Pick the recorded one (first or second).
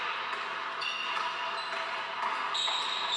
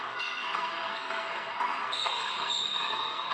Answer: first